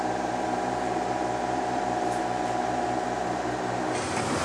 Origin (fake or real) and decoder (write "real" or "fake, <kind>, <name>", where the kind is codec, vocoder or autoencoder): fake, vocoder, BigVGAN v2